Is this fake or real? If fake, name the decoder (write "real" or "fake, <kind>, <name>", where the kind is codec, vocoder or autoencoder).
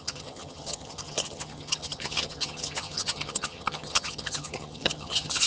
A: fake, vocoder, HiFi-GAN